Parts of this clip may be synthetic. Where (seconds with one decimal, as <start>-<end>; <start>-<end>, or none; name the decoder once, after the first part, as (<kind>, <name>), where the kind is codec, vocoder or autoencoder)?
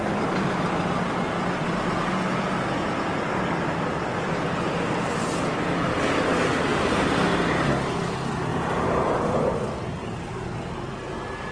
4.1-4.6 (vocoder, BigVGAN v2); 6.7-7.7; 8.5-10.7